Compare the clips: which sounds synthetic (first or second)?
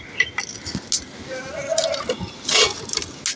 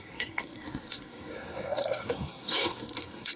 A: second